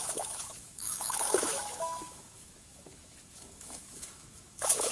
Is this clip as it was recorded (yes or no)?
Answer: no